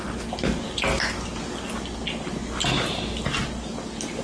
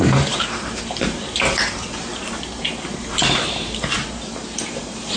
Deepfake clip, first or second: second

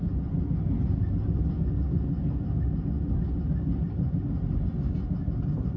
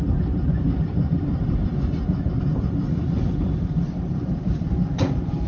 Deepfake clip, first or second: second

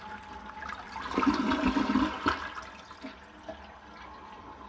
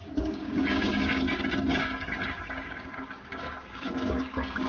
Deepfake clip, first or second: second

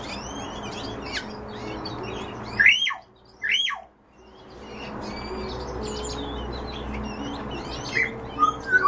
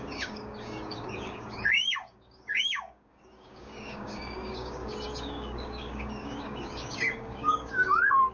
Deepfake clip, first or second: second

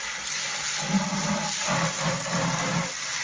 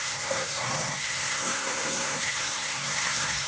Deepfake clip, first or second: second